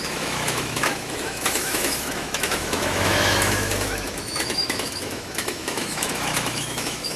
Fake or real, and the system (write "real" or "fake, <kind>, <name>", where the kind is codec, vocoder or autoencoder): fake, autoencoder, DAC-VAE